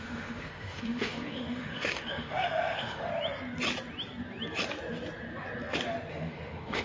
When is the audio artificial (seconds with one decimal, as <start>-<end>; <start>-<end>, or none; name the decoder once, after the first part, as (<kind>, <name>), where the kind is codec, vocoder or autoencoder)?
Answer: 0.0-3.1 (autoencoder, DAC-VAE); 6.1-6.8